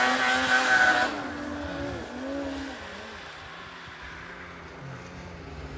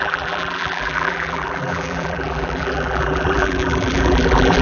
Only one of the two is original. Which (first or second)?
first